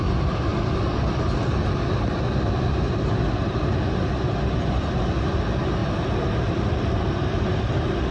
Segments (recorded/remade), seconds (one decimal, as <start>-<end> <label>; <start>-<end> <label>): 0.0-8.1 recorded